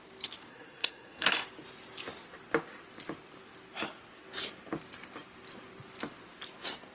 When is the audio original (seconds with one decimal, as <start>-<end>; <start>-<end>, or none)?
0.0-0.5; 1.3-6.9